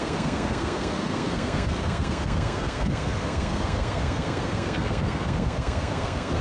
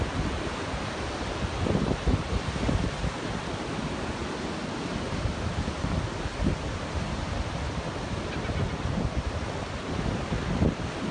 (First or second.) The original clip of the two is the second